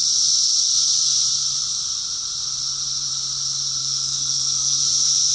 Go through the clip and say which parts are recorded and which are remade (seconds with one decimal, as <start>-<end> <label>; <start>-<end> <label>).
0.0-3.8 recorded; 3.8-4.8 remade; 4.8-5.3 recorded